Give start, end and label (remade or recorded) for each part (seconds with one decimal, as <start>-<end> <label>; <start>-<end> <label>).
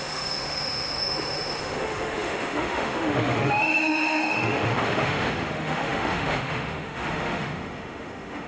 0.0-8.5 remade